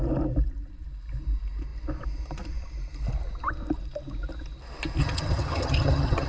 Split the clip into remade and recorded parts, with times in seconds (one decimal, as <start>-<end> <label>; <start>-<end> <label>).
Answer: 0.0-5.0 recorded; 5.0-6.3 remade